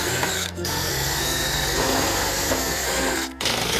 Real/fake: fake